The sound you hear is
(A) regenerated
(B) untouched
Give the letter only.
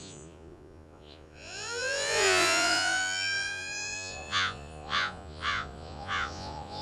A